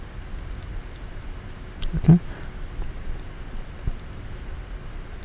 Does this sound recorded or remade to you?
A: recorded